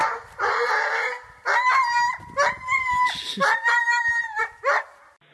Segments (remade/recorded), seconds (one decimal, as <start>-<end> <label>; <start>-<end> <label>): 0.0-5.3 recorded

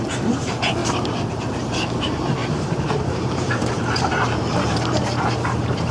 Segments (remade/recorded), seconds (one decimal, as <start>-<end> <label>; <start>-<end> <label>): 0.0-0.8 remade; 0.8-1.3 recorded; 1.3-5.9 remade